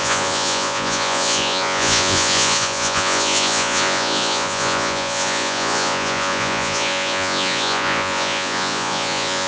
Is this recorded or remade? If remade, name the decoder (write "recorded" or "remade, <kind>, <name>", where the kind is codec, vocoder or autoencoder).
remade, vocoder, Vocos